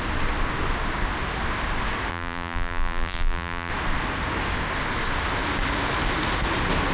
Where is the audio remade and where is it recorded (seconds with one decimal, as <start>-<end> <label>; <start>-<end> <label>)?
0.0-2.1 recorded; 2.1-3.7 remade; 3.7-6.9 recorded